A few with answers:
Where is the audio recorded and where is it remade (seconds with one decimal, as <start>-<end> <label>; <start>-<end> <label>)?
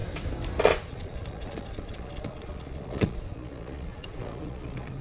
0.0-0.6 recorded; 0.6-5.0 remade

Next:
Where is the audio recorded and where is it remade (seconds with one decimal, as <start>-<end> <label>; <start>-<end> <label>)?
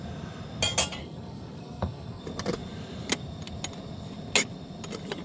0.0-1.0 recorded; 1.0-2.2 remade; 2.2-5.2 recorded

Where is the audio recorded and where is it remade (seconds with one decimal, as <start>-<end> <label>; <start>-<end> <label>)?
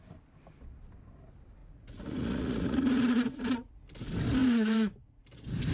0.0-1.6 recorded; 1.6-3.7 remade; 3.7-4.4 recorded; 4.4-5.2 remade; 5.2-5.7 recorded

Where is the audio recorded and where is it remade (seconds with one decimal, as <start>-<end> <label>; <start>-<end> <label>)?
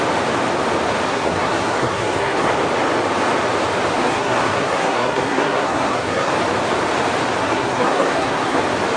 0.0-1.1 recorded; 1.1-2.5 remade; 2.5-3.9 recorded; 3.9-6.3 remade; 6.3-7.4 recorded; 7.4-8.6 remade; 8.6-9.0 recorded